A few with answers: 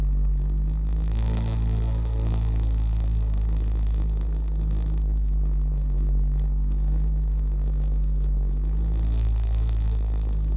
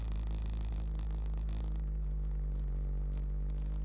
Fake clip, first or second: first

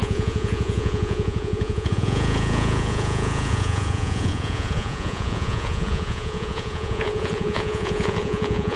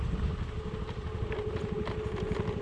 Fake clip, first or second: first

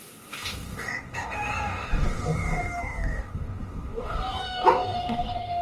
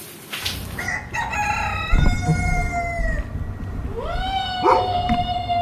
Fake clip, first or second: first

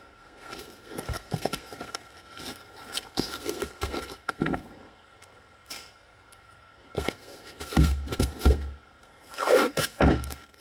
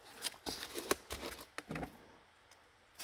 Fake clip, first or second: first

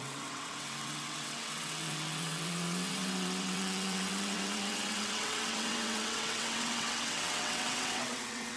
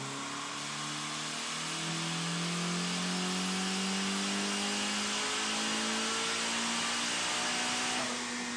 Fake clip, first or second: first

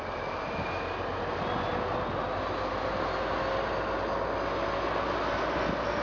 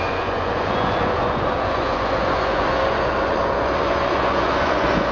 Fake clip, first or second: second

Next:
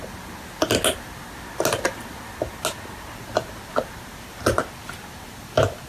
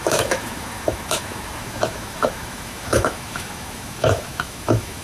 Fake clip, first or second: second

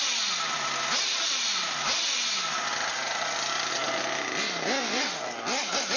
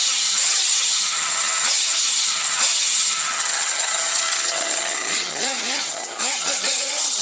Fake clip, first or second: second